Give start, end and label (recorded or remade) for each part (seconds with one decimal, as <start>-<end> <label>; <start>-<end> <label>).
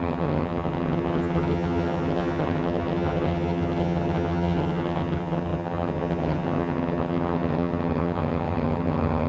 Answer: 0.0-9.3 remade